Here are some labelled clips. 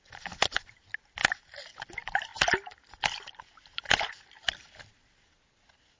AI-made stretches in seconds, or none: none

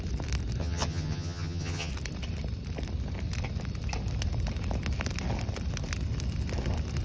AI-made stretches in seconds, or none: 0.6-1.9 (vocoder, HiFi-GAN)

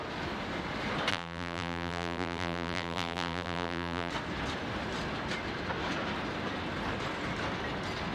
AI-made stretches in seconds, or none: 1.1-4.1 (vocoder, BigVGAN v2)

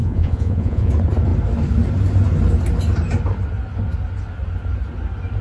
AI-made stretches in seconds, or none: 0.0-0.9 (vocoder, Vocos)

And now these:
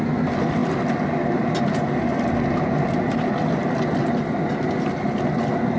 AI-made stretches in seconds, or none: none

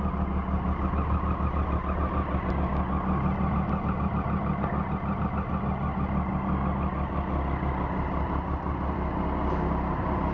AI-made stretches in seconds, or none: none